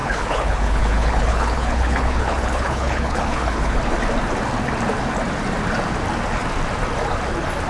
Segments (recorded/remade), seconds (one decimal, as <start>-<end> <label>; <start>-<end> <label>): 0.0-3.8 remade; 3.8-7.7 recorded